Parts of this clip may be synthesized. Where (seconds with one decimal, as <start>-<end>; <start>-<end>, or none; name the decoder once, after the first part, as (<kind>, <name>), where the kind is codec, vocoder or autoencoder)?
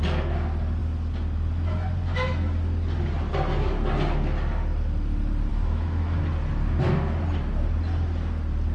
5.5-6.2 (autoencoder, DAC-VAE)